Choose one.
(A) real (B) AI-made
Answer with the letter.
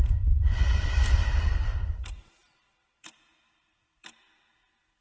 A